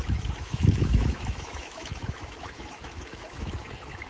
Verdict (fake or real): fake